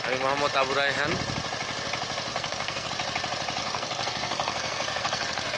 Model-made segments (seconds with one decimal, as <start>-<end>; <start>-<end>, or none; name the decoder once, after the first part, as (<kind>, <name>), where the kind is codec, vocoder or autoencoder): 2.3-2.9 (codec, SNAC); 3.6-5.6